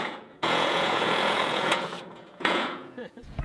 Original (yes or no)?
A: no